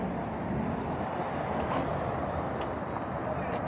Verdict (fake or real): real